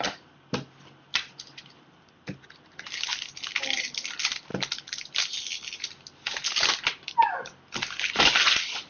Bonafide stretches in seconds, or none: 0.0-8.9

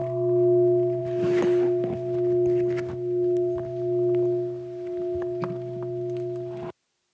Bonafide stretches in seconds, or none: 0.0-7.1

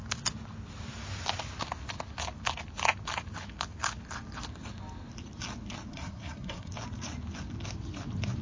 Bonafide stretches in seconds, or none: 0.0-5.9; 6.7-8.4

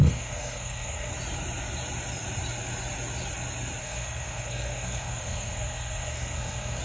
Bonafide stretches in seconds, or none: 1.1-3.8

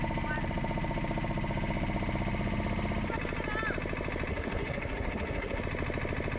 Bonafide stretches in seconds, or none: 0.0-4.3; 5.6-6.4